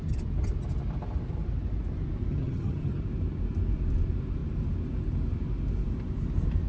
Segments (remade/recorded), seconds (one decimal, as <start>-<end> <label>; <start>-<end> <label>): 0.0-2.3 recorded; 2.3-3.0 remade; 3.0-6.7 recorded

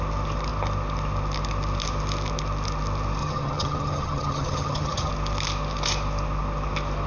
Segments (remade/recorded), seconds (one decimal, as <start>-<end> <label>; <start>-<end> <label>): 0.0-3.2 recorded; 3.2-5.1 remade; 5.1-7.1 recorded

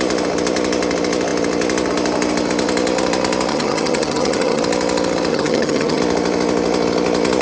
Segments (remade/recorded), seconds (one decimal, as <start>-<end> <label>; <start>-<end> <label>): 0.0-3.5 recorded; 3.5-4.6 remade; 4.6-5.3 recorded; 5.3-6.0 remade; 6.0-7.4 recorded

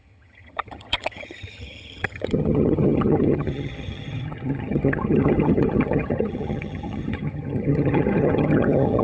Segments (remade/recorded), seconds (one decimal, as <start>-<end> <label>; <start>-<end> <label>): 0.0-9.0 remade

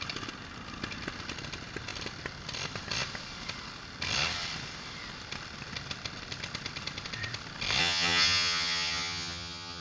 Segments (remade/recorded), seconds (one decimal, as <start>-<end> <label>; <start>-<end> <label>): 0.0-7.8 recorded; 7.8-9.8 remade

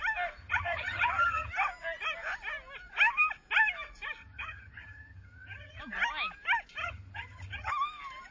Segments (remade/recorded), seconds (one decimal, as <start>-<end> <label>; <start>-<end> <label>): 0.0-0.4 recorded; 0.4-1.5 remade; 1.5-4.2 recorded; 4.2-5.8 remade; 5.8-6.8 recorded; 6.8-7.7 remade; 7.7-8.3 recorded

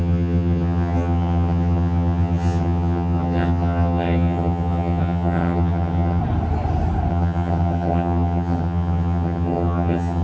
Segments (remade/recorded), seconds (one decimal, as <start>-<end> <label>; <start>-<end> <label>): 0.0-6.2 remade; 6.2-7.1 recorded; 7.1-10.2 remade

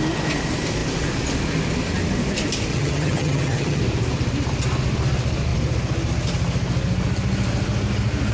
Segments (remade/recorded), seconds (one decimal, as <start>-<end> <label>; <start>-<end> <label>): 0.0-2.7 recorded; 2.7-3.8 remade; 3.8-8.3 recorded